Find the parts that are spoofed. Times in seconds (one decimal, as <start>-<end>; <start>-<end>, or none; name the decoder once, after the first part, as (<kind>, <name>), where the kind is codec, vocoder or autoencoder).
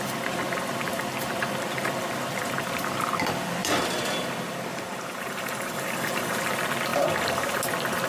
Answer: 4.7-6.5 (vocoder, BigVGAN v2); 6.9-7.6